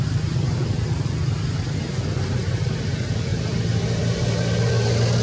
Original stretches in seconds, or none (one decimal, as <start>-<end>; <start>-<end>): 0.0-5.2